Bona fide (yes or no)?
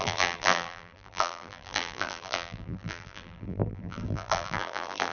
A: no